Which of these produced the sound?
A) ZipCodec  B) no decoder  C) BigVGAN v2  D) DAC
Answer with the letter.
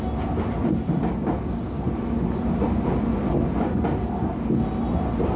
B